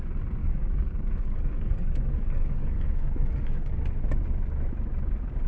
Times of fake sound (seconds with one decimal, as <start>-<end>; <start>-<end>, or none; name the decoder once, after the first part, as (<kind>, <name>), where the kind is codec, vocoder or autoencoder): 0.4-3.7 (codec, DAC)